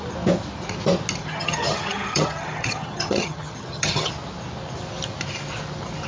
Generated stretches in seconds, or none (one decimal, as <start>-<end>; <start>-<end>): 1.2-4.1